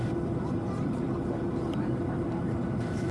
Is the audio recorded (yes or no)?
no